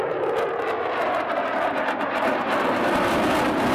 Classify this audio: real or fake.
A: real